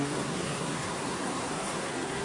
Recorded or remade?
remade